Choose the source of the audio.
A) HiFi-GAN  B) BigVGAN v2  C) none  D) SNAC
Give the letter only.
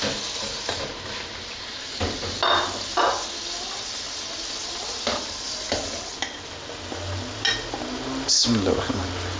C